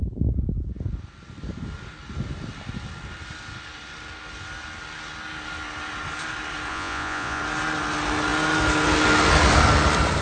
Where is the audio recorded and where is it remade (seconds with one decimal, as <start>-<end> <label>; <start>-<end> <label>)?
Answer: 0.0-6.7 recorded; 6.7-7.4 remade; 7.4-10.2 recorded